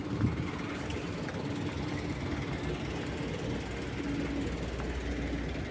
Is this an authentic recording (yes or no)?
yes